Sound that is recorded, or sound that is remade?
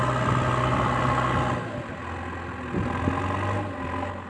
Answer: recorded